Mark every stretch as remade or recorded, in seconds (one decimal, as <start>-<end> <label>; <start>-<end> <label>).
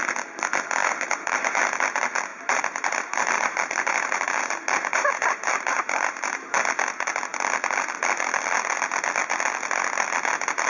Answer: 0.0-0.8 recorded; 0.8-1.6 remade; 1.6-2.3 recorded; 2.3-6.6 remade; 6.6-10.7 recorded